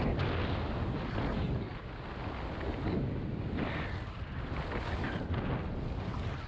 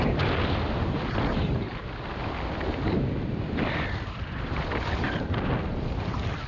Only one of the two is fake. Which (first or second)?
second